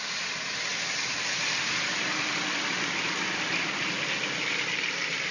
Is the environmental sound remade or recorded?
recorded